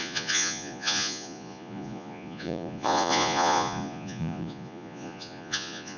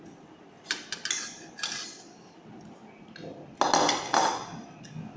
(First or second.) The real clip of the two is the second